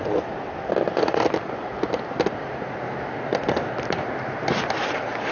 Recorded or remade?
recorded